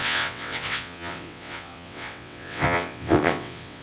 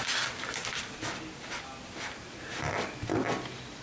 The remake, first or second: first